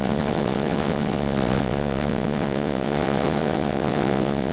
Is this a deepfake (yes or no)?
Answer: yes